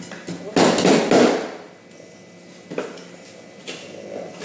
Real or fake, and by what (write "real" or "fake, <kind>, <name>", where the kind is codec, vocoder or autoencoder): real